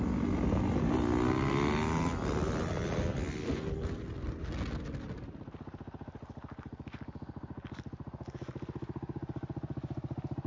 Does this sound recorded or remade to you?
recorded